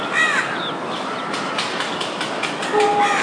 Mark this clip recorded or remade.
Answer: recorded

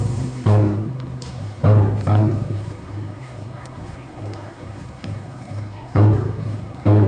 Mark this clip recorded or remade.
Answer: remade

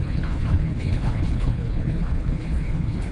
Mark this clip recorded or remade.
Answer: remade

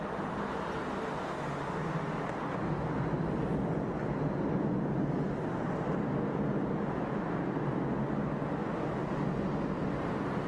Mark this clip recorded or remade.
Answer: recorded